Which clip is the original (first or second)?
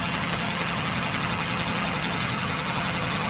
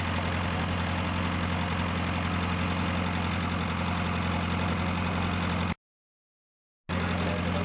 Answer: second